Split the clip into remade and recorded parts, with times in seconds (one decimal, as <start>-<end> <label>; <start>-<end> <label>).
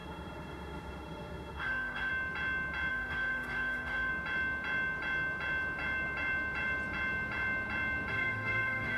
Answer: 0.0-2.1 remade; 2.1-2.9 recorded; 2.9-4.1 remade; 4.1-8.1 recorded; 8.1-9.0 remade